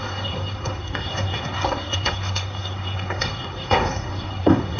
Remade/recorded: remade